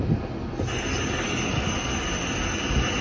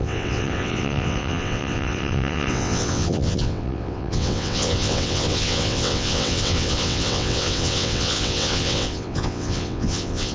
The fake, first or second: second